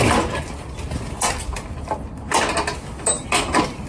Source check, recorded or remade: recorded